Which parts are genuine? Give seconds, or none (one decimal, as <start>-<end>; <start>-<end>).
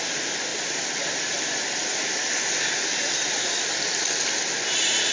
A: 0.0-5.1